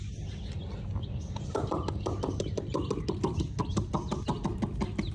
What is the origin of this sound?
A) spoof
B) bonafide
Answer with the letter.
B